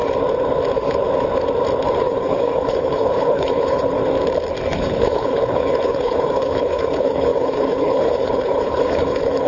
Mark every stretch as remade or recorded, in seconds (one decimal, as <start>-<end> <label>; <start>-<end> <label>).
0.0-2.0 recorded; 2.0-4.0 remade; 4.0-4.8 recorded; 4.8-9.5 remade